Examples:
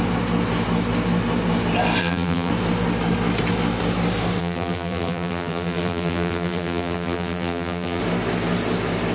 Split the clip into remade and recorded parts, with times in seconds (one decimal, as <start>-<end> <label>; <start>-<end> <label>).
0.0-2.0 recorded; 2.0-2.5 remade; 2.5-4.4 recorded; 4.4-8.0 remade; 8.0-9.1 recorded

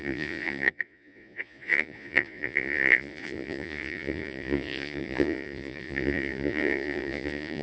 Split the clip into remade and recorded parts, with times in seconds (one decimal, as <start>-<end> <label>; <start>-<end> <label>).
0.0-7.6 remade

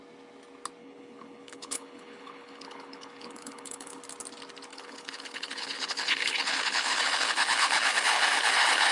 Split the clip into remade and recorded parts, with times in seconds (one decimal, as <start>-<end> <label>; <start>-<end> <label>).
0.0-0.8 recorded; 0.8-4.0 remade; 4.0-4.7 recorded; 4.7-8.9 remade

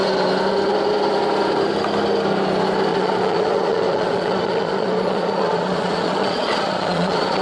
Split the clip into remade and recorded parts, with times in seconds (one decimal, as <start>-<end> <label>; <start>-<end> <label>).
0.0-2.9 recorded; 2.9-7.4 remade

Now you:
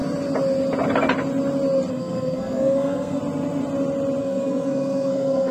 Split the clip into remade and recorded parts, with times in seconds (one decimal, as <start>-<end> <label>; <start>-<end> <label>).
0.0-1.9 recorded; 1.9-3.2 remade; 3.2-4.2 recorded; 4.2-5.5 remade